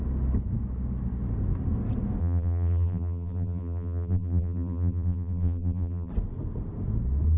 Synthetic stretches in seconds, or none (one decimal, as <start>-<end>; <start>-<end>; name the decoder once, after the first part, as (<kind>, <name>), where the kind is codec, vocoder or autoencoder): 2.2-6.1 (vocoder, BigVGAN v2)